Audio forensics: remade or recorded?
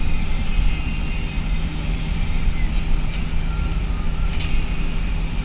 remade